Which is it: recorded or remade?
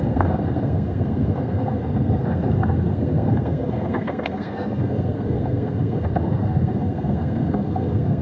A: remade